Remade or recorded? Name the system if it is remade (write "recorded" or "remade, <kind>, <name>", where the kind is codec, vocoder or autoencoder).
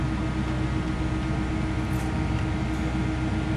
recorded